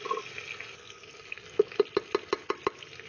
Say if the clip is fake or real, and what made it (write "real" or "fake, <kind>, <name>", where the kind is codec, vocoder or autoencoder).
real